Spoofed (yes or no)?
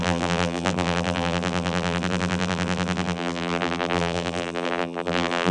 yes